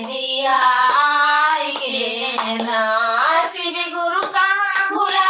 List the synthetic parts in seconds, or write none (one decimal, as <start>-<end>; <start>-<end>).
0.0-5.3